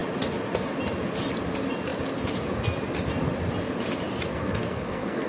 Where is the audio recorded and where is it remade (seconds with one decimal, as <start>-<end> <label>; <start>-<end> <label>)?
0.0-4.3 recorded; 4.3-5.3 remade